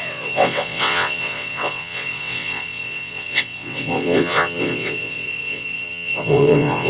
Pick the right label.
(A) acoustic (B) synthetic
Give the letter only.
B